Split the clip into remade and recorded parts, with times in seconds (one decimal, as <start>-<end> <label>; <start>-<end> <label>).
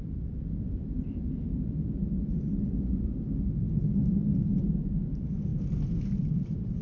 0.0-2.0 remade; 2.0-4.6 recorded; 4.6-5.5 remade; 5.5-6.3 recorded; 6.3-6.8 remade